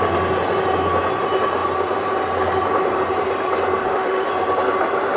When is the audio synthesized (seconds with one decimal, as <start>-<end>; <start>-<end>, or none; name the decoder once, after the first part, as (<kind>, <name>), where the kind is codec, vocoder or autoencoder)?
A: 3.8-4.3 (autoencoder, DAC-VAE)